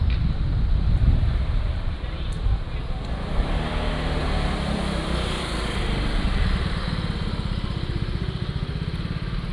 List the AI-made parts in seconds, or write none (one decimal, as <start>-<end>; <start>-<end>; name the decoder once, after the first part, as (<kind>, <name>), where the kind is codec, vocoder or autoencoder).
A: 1.3-2.6 (vocoder, BigVGAN v2); 4.2-6.9